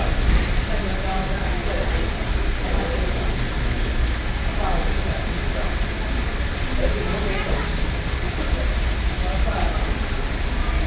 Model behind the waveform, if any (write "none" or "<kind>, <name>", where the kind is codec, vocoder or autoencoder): none